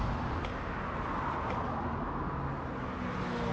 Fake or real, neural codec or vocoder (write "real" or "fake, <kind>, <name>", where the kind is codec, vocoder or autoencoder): real